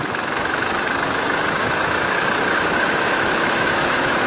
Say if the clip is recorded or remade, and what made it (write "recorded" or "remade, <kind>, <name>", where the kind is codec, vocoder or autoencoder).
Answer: remade, autoencoder, DAC-VAE